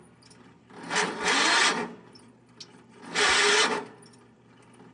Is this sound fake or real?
real